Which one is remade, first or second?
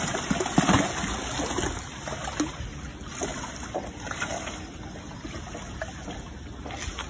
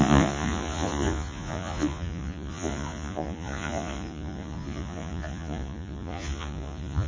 second